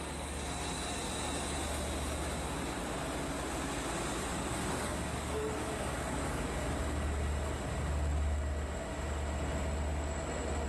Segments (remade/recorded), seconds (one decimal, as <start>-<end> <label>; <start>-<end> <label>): 0.0-4.3 recorded; 4.3-6.4 remade; 6.4-10.7 recorded